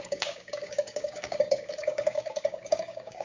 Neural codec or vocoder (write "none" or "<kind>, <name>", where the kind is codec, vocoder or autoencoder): codec, DAC